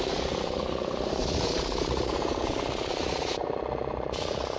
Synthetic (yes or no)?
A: yes